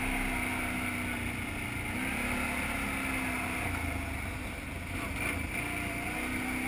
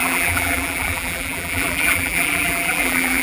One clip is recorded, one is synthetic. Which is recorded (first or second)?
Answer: first